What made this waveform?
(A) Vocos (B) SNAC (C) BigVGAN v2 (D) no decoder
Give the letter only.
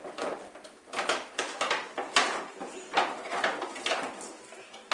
D